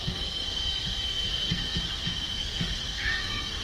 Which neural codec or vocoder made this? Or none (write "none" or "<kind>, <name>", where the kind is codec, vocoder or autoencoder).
codec, SNAC